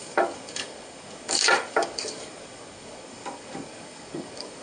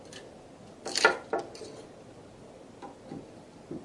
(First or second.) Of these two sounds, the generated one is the first